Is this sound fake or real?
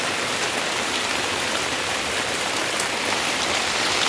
fake